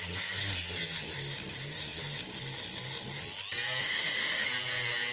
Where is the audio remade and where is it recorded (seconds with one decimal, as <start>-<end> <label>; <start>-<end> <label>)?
0.0-3.8 recorded; 3.8-4.5 remade; 4.5-5.1 recorded